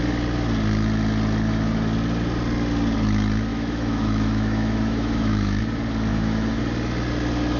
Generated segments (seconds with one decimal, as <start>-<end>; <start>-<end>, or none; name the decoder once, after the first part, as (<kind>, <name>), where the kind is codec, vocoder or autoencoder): 3.5-5.6 (autoencoder, DAC-VAE); 6.1-6.6